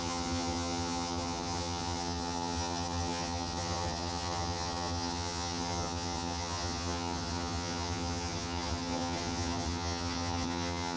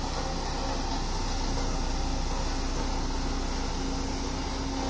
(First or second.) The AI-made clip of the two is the first